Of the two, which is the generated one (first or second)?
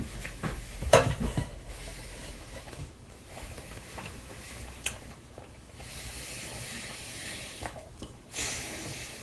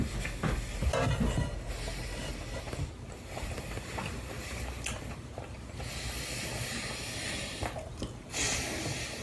first